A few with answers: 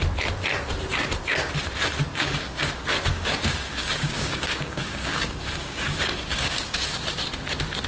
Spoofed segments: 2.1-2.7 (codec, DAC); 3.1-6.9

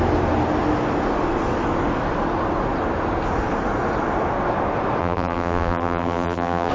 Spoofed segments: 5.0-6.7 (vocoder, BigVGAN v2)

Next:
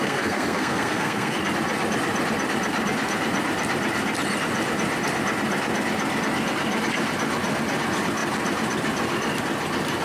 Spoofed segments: 0.0-1.4 (codec, SNAC)

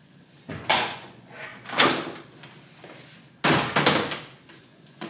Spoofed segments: 0.0-1.5 (vocoder, Vocos); 4.6-5.1

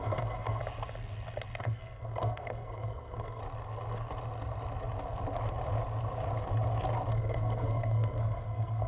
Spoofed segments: 0.0-0.6 (codec, SNAC); 1.6-3.4; 7.1-8.9